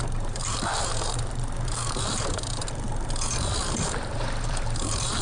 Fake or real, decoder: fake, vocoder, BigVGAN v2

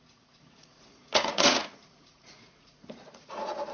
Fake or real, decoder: fake, vocoder, Vocos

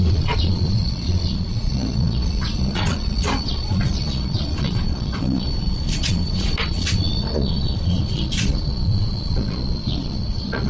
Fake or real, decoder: fake, vocoder, Vocos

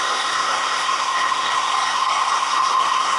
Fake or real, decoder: fake, codec, SNAC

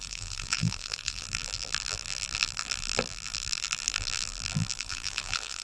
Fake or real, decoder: fake, vocoder, BigVGAN v2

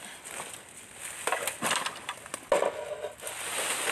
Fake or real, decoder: real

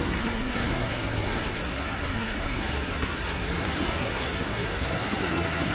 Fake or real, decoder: fake, codec, SNAC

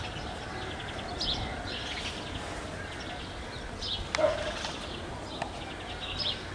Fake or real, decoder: real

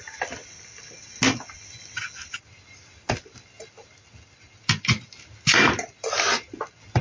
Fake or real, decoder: real